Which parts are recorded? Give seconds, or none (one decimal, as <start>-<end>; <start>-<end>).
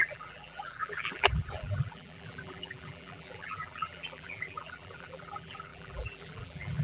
none